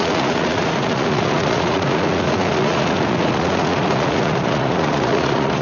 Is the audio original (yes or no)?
no